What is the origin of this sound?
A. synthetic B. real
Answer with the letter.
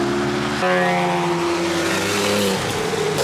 B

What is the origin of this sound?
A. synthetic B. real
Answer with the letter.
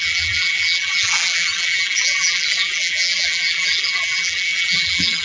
A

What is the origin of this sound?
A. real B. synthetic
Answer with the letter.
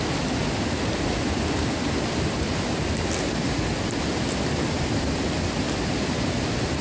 A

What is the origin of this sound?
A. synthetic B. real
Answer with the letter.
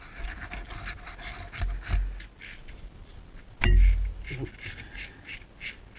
B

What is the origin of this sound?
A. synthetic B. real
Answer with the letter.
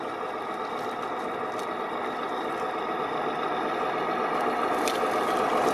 B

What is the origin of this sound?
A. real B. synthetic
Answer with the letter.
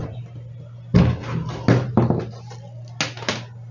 A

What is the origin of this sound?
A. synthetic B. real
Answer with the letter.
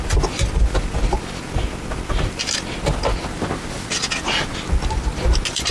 B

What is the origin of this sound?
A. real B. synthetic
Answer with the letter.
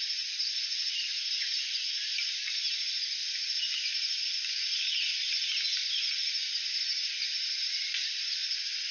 A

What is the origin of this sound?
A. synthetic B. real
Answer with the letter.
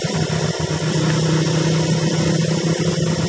B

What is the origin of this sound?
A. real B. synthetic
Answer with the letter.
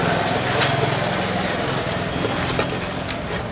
A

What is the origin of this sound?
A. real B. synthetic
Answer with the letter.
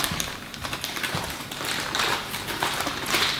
B